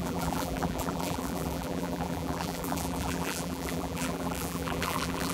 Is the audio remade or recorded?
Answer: remade